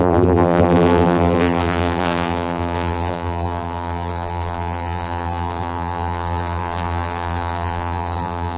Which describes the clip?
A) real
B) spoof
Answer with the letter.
B